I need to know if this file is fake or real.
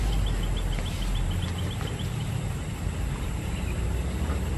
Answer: real